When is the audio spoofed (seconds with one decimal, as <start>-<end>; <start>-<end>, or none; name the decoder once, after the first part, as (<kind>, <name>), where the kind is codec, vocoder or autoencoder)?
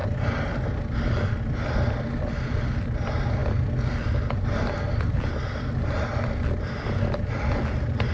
none